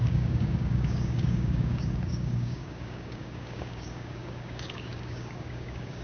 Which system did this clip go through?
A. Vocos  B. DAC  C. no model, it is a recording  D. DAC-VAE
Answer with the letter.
B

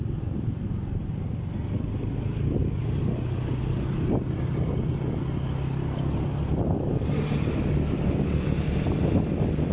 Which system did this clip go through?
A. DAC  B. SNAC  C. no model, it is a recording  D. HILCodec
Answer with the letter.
C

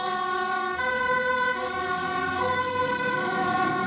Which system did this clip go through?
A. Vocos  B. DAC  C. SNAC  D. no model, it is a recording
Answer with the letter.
B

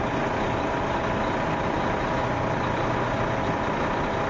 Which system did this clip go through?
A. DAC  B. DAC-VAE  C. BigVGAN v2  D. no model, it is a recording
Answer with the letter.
D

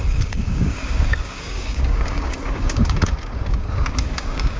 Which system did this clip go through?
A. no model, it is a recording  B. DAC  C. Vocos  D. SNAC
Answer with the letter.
B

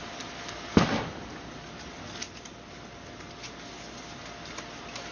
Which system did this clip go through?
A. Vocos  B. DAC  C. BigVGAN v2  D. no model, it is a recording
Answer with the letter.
D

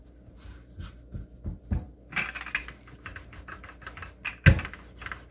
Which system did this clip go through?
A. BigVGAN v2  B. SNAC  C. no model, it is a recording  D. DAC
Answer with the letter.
C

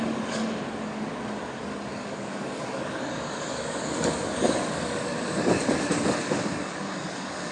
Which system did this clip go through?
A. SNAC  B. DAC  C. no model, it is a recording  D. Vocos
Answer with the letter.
B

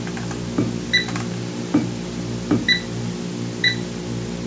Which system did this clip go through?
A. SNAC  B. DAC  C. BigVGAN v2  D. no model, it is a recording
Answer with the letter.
D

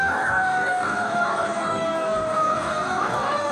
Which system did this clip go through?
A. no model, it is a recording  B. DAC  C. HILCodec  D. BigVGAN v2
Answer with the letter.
B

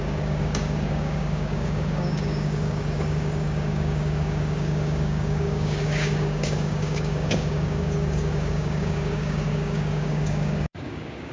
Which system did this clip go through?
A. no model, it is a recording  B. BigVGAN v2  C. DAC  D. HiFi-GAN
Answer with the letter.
C